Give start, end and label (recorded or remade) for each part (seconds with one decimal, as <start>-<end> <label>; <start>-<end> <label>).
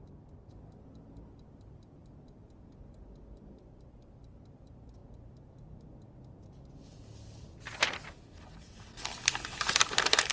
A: 0.0-2.0 remade; 2.0-3.4 recorded; 3.4-5.0 remade; 5.0-6.5 recorded; 6.5-10.3 remade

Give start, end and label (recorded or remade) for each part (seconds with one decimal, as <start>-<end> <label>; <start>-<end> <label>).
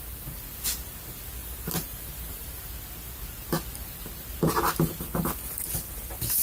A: 0.0-1.4 recorded; 1.4-2.7 remade; 2.7-6.4 recorded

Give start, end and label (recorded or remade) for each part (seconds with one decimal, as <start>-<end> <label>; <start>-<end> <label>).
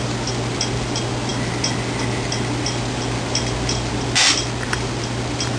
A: 0.0-5.6 recorded